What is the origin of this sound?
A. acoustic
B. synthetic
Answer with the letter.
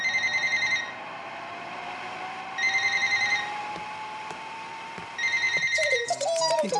B